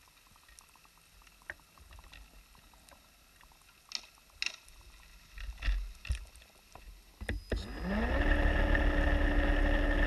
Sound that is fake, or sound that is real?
real